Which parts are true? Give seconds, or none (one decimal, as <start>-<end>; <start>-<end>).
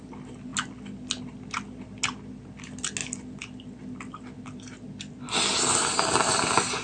0.0-6.8